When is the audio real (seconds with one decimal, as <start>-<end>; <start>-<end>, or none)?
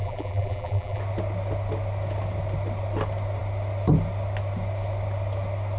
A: 1.0-5.8